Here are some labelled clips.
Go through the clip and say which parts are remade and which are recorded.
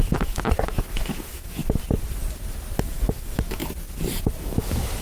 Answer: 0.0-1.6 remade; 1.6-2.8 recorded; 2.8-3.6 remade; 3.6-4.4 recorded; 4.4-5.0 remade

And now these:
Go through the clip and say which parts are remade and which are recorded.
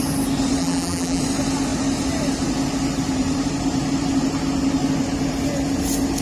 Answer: 0.0-0.6 recorded; 0.6-1.2 remade; 1.2-6.2 recorded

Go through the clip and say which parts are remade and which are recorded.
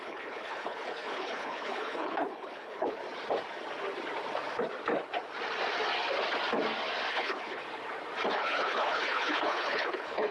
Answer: 0.0-3.0 remade; 3.0-7.1 recorded; 7.1-7.6 remade; 7.6-8.3 recorded; 8.3-10.3 remade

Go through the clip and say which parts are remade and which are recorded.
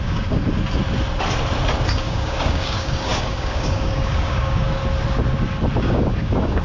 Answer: 0.0-0.4 remade; 0.4-2.0 recorded; 2.0-4.8 remade; 4.8-5.9 recorded; 5.9-6.6 remade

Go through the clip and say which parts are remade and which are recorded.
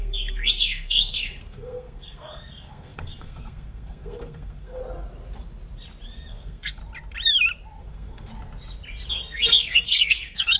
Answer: 0.0-4.8 remade; 4.8-6.3 recorded; 6.3-6.8 remade; 6.8-7.8 recorded; 7.8-8.3 remade; 8.3-9.1 recorded; 9.1-10.6 remade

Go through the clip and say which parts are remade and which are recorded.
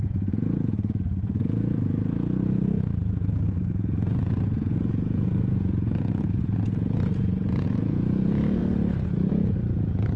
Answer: 0.0-8.6 remade; 8.6-9.3 recorded; 9.3-10.2 remade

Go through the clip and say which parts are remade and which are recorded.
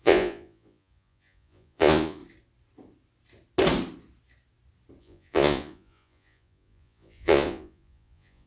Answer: 0.0-2.2 remade; 2.2-5.0 recorded; 5.0-8.5 remade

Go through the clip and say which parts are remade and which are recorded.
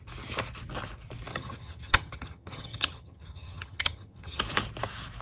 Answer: 0.0-1.3 recorded; 1.3-4.4 remade; 4.4-5.2 recorded